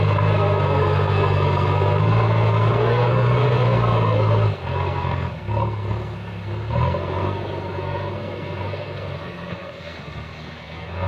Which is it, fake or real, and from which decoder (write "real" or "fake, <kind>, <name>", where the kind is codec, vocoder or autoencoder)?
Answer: fake, codec, SNAC